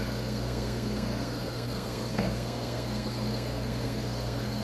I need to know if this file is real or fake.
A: fake